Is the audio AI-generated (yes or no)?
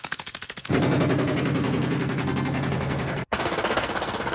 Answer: yes